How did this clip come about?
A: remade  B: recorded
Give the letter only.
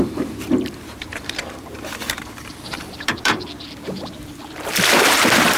A